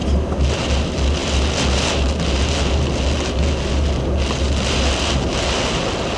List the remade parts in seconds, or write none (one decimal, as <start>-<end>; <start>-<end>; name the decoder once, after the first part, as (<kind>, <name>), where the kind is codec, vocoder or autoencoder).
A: none